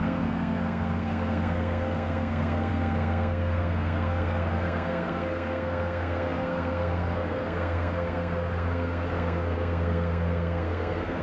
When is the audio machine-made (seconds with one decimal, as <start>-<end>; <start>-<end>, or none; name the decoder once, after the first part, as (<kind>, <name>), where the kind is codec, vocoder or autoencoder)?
0.0-11.2 (codec, SNAC)